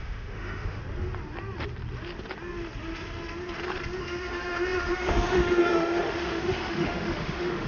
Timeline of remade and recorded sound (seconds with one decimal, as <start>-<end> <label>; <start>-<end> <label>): 0.0-0.8 remade; 0.8-4.0 recorded; 4.0-7.7 remade